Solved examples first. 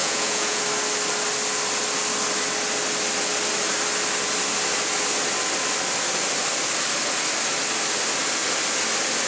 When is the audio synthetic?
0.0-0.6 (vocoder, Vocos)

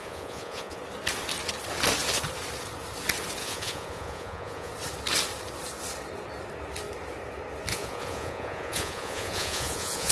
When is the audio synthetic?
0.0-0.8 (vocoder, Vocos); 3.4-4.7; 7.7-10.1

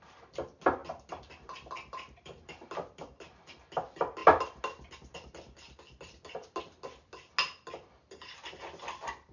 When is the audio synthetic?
none

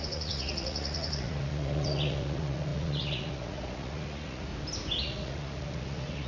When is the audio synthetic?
0.0-4.5 (vocoder, Vocos); 5.0-6.3